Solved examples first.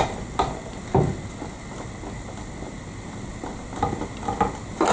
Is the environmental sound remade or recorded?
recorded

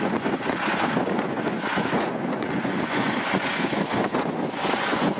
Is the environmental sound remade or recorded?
remade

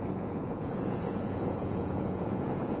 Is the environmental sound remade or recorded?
remade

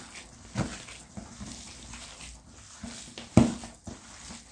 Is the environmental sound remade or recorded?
recorded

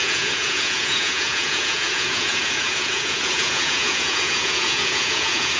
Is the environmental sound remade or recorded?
remade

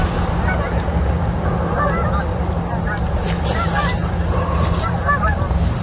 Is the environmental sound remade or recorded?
recorded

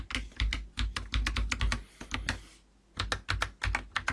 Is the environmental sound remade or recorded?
recorded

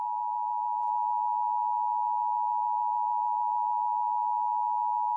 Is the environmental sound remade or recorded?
recorded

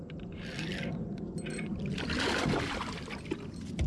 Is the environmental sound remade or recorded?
recorded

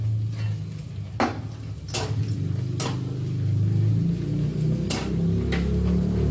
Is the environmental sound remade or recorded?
recorded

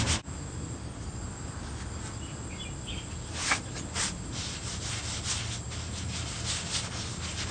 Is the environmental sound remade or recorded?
recorded